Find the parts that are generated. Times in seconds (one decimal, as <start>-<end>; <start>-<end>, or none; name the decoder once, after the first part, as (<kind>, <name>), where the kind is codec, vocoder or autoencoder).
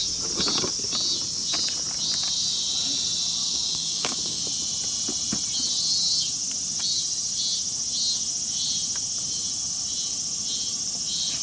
3.4-4.4 (codec, DAC)